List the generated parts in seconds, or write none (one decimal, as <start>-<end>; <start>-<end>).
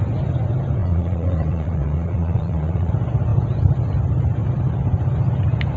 0.8-2.9